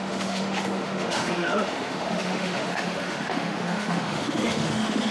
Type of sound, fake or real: fake